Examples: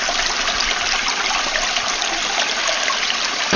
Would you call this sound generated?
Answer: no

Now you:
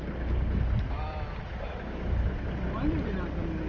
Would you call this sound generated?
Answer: no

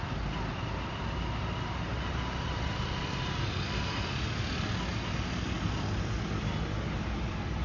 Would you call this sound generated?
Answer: no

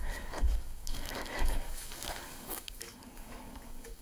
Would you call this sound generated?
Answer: yes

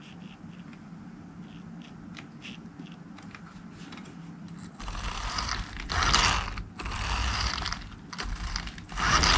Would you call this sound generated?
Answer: no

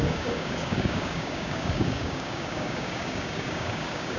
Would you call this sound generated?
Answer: yes